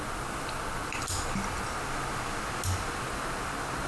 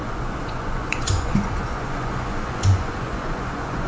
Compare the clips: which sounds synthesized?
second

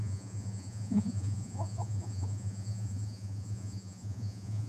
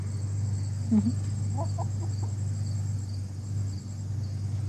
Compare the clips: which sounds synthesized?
first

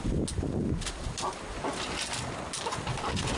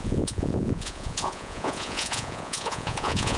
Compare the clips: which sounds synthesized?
second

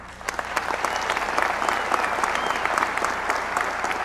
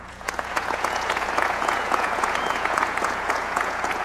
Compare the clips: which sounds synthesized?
second